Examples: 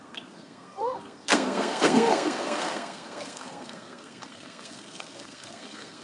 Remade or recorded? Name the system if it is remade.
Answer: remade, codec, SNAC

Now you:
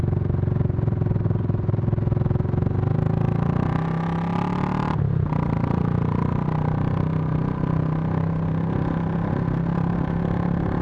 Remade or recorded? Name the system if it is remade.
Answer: recorded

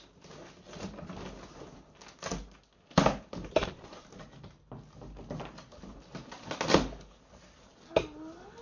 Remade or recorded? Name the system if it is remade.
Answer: recorded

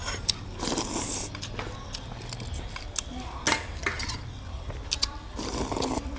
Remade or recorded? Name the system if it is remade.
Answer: recorded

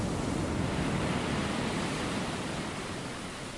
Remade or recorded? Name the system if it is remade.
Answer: recorded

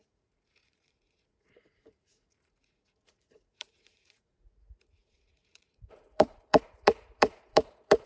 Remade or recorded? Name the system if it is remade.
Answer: remade, vocoder, Vocos